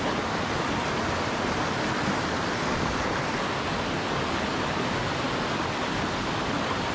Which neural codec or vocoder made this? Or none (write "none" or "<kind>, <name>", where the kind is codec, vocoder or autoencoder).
none